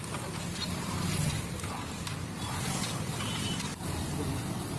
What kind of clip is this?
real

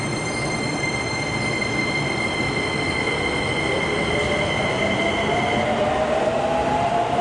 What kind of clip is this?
real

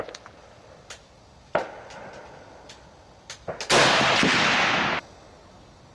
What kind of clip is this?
real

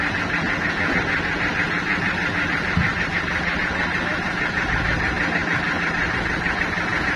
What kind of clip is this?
real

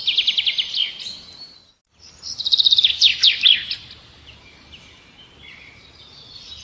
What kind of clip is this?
real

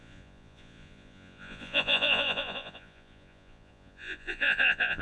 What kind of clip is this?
fake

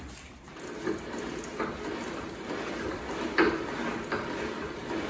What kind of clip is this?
real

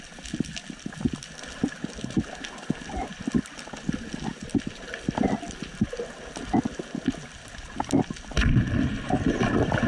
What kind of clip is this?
real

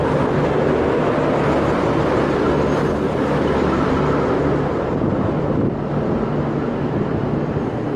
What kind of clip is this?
real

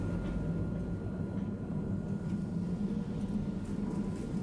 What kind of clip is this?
real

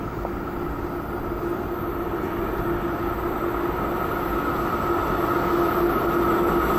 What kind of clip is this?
real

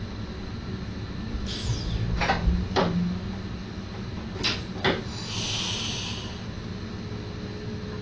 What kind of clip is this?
real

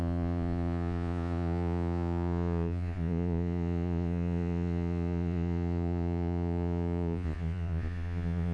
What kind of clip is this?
fake